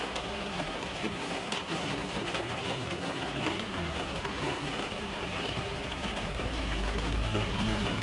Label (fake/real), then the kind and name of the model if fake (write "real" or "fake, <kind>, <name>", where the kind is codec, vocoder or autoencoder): fake, codec, SNAC